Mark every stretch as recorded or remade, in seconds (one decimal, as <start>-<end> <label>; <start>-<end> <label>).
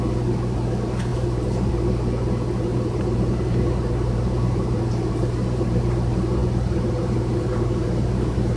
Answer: 0.0-1.1 recorded; 1.1-1.7 remade; 1.7-2.7 recorded; 2.7-5.8 remade; 5.8-6.4 recorded; 6.4-8.6 remade